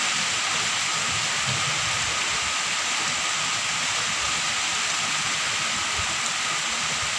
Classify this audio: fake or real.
real